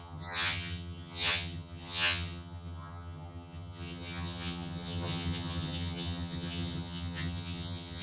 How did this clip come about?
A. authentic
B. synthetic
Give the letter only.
B